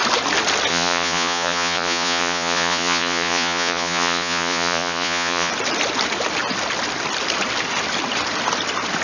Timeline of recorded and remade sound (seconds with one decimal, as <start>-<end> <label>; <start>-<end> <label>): 0.0-0.7 recorded; 0.7-5.5 remade; 5.5-9.0 recorded